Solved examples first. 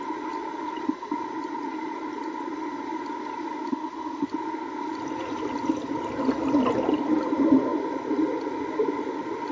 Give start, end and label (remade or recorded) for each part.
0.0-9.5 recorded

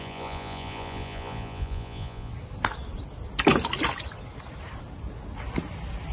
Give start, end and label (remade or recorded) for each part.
0.0-2.3 remade; 2.3-6.1 recorded

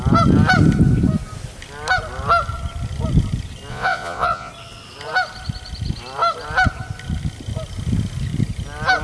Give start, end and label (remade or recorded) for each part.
0.0-3.7 recorded; 3.7-4.5 remade; 4.5-9.0 recorded

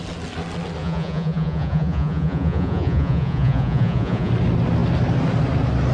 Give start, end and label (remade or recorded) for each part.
0.0-0.8 recorded; 0.8-4.3 remade; 4.3-5.9 recorded